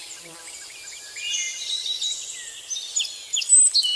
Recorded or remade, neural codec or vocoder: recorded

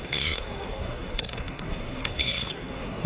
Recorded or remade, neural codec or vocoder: remade, codec, SNAC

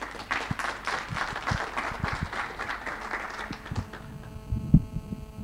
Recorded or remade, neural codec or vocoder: recorded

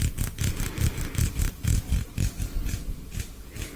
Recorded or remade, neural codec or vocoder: recorded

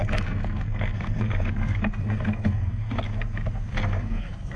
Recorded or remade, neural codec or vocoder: remade, codec, SNAC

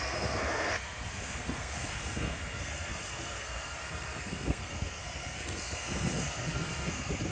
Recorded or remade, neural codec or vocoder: remade, codec, SNAC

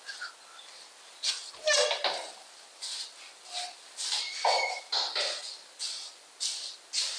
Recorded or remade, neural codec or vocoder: recorded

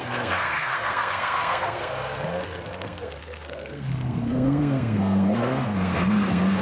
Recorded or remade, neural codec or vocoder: remade, codec, SNAC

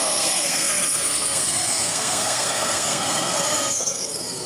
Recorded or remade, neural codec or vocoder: remade, codec, SNAC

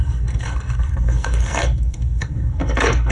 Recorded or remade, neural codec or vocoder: remade, codec, SNAC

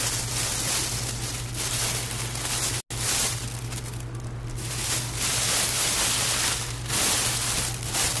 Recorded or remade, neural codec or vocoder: recorded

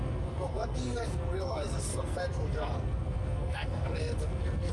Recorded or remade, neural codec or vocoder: remade, codec, SNAC